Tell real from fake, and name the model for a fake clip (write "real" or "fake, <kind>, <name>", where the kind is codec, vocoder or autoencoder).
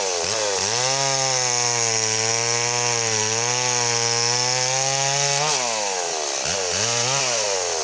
real